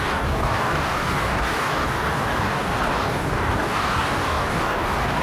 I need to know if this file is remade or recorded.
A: remade